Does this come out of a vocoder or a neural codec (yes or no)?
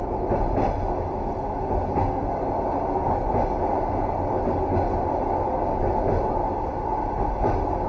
no